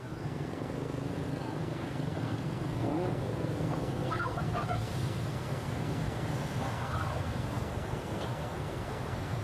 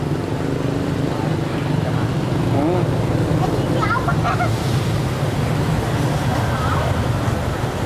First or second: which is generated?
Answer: first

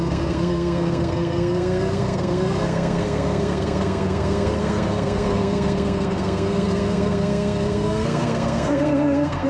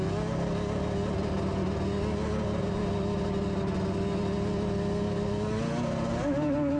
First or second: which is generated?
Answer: first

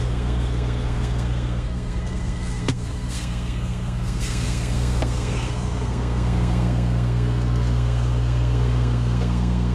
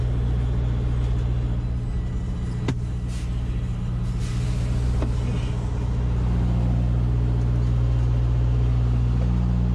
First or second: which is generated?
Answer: first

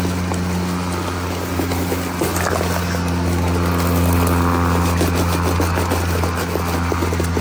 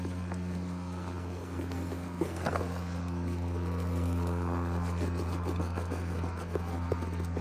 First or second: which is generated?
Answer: second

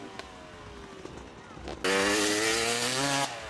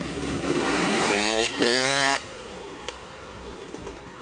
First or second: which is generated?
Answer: second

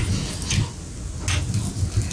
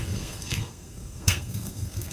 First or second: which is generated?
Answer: second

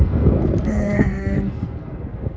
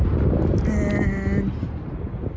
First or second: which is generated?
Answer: first